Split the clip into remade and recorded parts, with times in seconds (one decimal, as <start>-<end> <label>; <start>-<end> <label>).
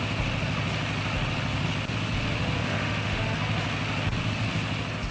0.0-2.6 recorded; 2.6-3.2 remade; 3.2-5.1 recorded